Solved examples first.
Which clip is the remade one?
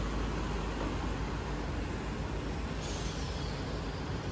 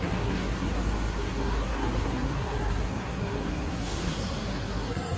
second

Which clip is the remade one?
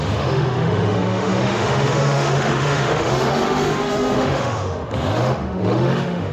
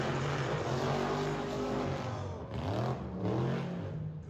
first